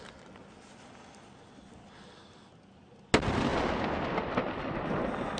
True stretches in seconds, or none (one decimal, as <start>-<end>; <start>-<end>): 0.0-5.4

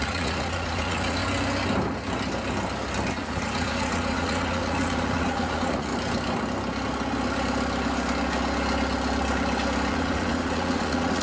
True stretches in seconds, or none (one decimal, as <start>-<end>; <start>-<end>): 1.2-3.1; 5.9-9.9

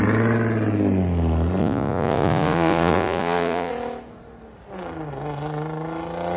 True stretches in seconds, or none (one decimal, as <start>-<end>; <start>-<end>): 0.0-1.6; 3.7-6.4